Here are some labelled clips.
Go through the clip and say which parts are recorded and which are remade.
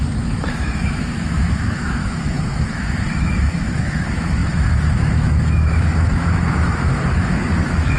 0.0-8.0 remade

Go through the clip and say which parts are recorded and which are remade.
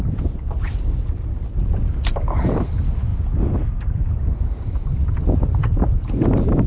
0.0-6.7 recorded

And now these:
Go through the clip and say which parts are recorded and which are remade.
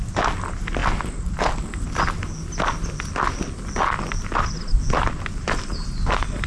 0.0-6.5 recorded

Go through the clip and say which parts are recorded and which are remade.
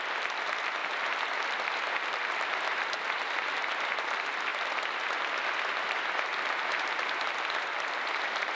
0.0-8.5 recorded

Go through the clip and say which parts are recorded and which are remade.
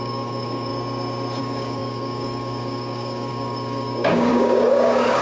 0.0-0.7 remade; 0.7-1.4 recorded; 1.4-5.2 remade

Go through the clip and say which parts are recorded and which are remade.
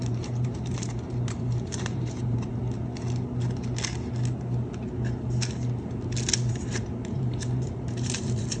0.0-2.6 remade; 2.6-6.5 recorded; 6.5-8.6 remade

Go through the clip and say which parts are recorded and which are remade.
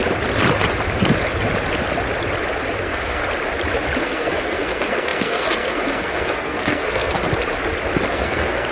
0.0-2.8 recorded; 2.8-3.2 remade; 3.2-4.0 recorded; 4.0-7.2 remade; 7.2-8.1 recorded; 8.1-8.7 remade